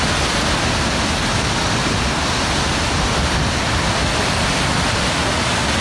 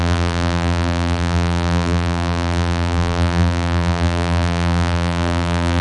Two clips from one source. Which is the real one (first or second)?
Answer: first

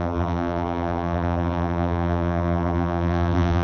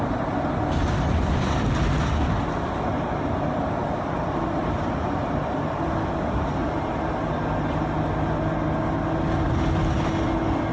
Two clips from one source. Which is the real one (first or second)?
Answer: second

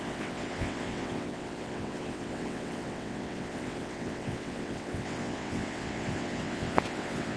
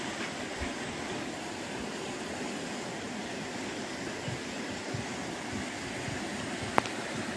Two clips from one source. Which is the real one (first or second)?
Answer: second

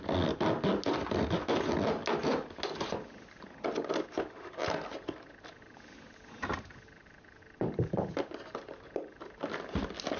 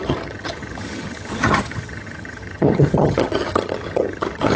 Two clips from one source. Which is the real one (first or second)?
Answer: first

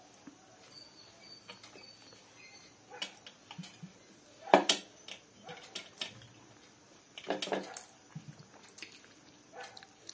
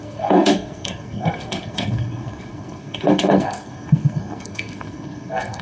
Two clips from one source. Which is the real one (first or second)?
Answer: first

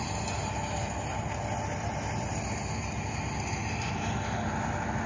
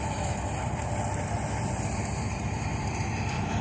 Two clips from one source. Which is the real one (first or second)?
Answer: first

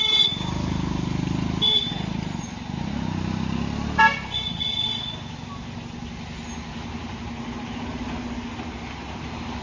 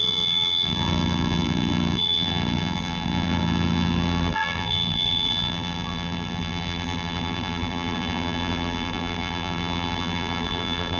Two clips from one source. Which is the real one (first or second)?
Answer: first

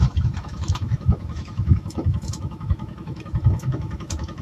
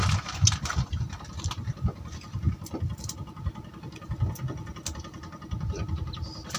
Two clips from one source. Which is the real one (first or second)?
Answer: second